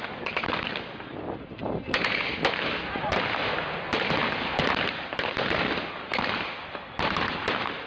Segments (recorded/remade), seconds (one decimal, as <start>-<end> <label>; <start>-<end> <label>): 0.0-1.6 remade; 1.6-2.9 recorded; 2.9-4.2 remade; 4.2-4.9 recorded; 4.9-7.9 remade

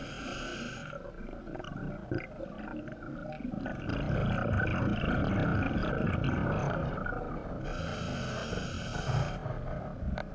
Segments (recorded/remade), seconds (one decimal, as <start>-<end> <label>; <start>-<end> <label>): 0.0-5.5 recorded; 5.5-6.1 remade; 6.1-6.6 recorded; 6.6-7.2 remade; 7.2-10.3 recorded